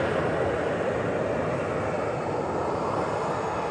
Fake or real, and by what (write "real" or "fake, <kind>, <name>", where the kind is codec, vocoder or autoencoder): real